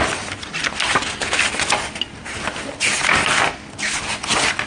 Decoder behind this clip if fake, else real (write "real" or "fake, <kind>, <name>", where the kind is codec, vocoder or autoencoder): real